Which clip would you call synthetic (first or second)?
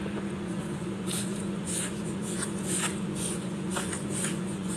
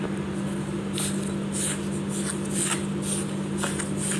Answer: first